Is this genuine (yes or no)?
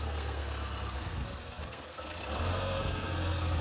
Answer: no